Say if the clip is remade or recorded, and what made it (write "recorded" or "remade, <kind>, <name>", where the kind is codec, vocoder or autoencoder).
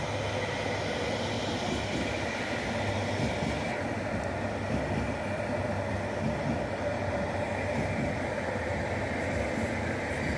recorded